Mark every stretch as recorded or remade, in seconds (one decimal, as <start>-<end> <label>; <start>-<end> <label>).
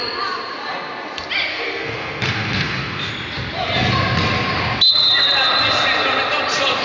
0.0-1.5 recorded; 1.5-3.1 remade; 3.1-6.8 recorded